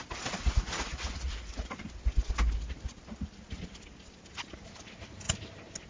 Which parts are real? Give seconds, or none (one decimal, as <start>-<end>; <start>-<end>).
0.0-0.4; 1.8-5.9